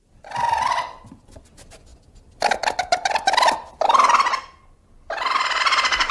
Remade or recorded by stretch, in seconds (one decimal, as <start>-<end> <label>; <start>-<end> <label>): 0.0-6.1 recorded